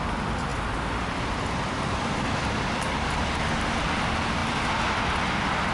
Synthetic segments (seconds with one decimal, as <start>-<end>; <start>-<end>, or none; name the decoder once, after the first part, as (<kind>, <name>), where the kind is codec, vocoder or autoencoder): none